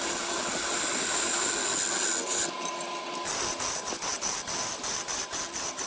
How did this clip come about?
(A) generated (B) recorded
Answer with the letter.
B